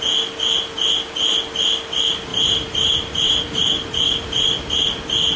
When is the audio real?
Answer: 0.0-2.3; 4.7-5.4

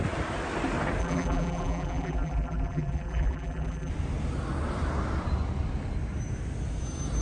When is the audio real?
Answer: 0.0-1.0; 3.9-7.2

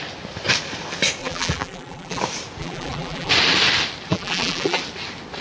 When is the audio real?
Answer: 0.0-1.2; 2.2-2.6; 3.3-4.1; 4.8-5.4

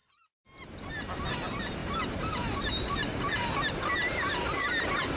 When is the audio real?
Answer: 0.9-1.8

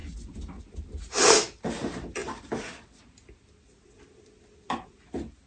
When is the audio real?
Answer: 0.0-2.2; 2.7-5.5

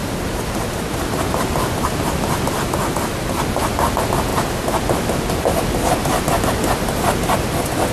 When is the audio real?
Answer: 2.7-7.9

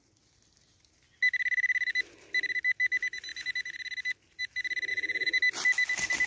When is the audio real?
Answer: 0.0-4.9; 5.4-6.3